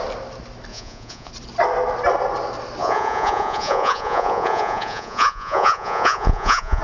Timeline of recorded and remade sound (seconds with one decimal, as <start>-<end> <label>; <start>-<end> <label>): 0.0-0.7 recorded; 0.7-1.3 remade; 1.3-2.8 recorded; 2.8-6.8 remade